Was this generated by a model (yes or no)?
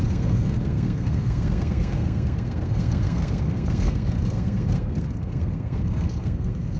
yes